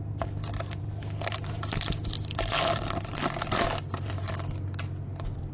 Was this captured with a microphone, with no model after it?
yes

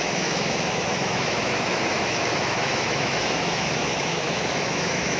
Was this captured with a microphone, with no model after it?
no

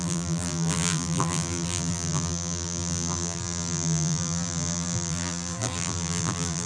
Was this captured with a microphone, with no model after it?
no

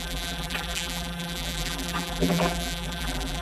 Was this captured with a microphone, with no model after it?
no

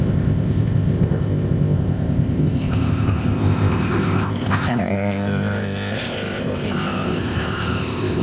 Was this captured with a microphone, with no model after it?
no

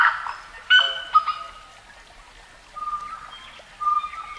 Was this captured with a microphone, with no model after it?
yes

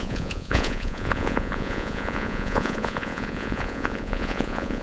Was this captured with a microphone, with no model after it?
no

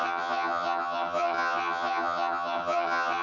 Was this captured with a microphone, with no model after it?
no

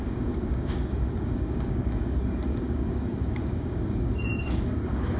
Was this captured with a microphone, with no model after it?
no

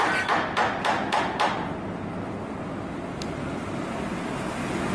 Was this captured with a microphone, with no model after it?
yes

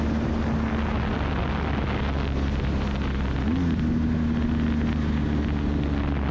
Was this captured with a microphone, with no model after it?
yes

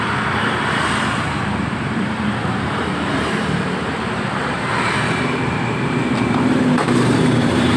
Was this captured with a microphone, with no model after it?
no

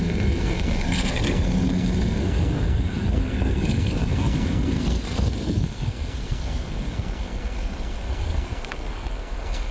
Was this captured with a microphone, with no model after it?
no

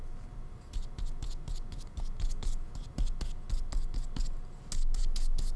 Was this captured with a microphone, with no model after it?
yes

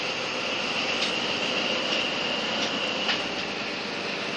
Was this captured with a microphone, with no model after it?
yes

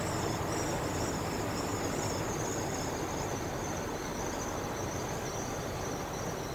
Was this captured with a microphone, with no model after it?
yes